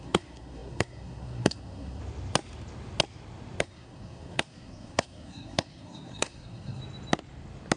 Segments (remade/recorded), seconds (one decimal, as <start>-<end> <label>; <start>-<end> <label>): 0.0-2.0 remade; 2.0-3.6 recorded; 3.6-6.8 remade; 6.8-7.8 recorded

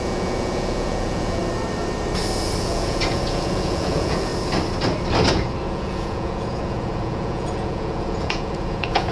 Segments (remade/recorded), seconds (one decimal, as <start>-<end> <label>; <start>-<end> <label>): 0.0-1.4 remade; 1.4-2.6 recorded; 2.6-4.3 remade; 4.3-5.3 recorded; 5.3-9.1 remade

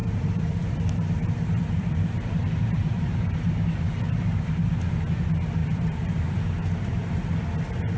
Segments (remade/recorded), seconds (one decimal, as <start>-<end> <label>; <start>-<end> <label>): 0.0-4.8 remade; 4.8-5.6 recorded; 5.6-7.1 remade; 7.1-8.0 recorded